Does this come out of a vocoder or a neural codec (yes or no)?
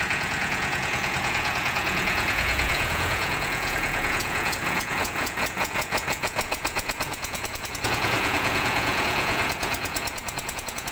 yes